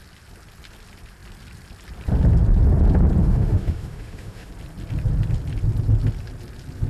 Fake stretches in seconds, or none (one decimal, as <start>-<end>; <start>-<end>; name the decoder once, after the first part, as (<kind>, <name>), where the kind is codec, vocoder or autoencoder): 3.2-4.5 (autoencoder, DAC-VAE)